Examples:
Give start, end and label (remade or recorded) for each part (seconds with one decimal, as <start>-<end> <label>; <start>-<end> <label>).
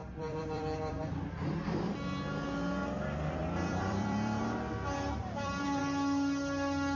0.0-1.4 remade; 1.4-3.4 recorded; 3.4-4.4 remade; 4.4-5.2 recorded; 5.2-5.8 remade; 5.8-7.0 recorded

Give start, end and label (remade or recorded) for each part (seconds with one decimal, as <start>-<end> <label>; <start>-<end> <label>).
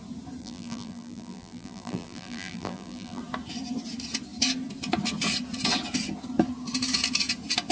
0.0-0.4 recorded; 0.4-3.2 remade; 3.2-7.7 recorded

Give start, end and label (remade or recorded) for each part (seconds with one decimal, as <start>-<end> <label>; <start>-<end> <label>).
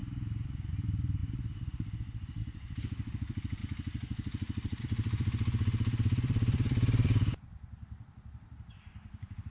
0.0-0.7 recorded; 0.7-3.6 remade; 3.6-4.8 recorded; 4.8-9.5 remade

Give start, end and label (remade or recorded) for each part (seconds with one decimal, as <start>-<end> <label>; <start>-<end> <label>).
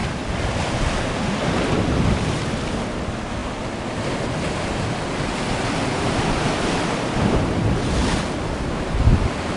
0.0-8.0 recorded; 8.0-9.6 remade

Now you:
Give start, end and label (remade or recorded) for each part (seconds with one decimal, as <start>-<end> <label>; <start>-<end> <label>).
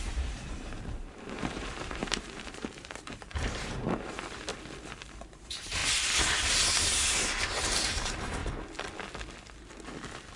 0.0-4.5 remade; 4.5-5.3 recorded; 5.3-5.8 remade; 5.8-7.6 recorded; 7.6-8.4 remade; 8.4-10.4 recorded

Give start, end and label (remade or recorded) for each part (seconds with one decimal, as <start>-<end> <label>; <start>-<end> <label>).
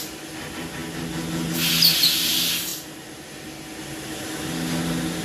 0.0-5.2 recorded